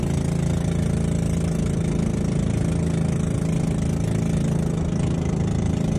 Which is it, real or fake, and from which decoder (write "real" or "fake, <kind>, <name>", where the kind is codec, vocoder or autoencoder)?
real